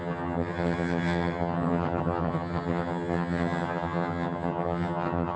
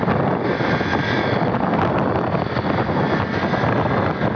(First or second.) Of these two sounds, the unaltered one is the second